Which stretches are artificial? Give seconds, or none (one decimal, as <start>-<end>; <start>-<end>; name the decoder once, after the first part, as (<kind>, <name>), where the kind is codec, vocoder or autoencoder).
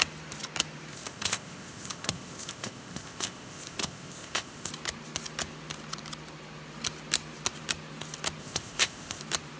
0.9-4.7 (codec, ZipCodec); 8.4-9.2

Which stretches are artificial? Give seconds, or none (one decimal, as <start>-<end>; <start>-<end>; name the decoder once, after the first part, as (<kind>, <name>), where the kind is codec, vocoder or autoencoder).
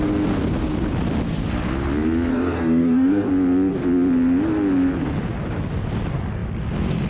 2.3-3.3 (codec, DAC)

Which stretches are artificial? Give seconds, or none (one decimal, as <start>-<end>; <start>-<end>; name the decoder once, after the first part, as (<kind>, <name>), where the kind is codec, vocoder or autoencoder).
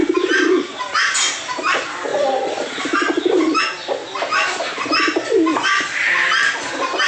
2.1-3.6 (vocoder, BigVGAN v2); 6.0-7.1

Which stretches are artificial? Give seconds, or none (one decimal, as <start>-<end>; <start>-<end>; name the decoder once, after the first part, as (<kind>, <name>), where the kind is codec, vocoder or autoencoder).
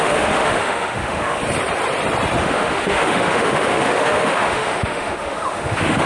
0.0-1.4 (autoencoder, DAC-VAE); 2.4-6.1